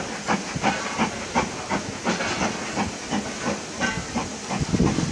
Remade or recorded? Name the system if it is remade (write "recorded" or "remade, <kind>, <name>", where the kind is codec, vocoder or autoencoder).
recorded